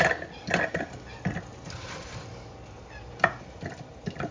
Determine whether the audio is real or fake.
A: real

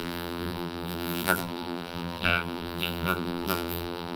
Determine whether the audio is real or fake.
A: fake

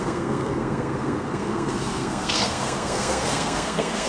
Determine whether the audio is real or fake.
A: fake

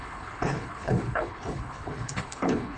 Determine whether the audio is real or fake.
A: fake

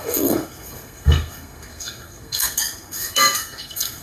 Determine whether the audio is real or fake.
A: fake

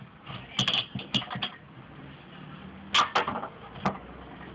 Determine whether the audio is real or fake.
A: real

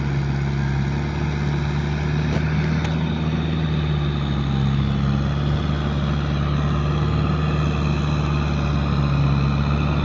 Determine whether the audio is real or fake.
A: real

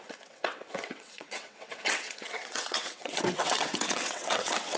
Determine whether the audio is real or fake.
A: fake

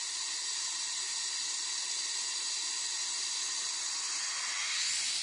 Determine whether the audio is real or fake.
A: real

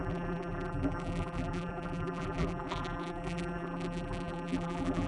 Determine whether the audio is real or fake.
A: fake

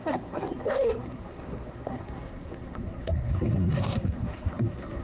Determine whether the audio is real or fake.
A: fake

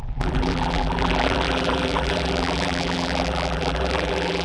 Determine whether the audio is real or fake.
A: fake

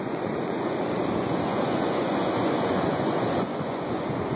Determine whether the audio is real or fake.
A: fake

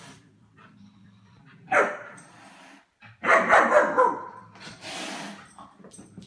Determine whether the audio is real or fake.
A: fake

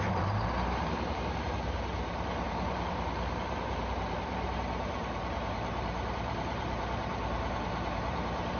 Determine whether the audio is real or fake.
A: fake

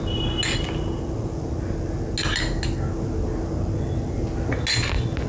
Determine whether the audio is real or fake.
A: real